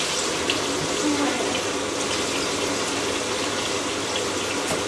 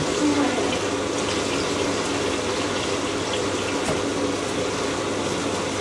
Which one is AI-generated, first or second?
first